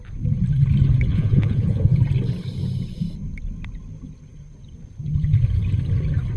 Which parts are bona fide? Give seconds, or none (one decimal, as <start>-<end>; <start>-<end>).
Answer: 0.0-1.1; 2.0-6.4